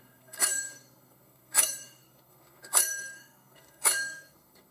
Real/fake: fake